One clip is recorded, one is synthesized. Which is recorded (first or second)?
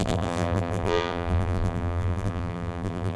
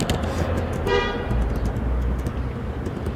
second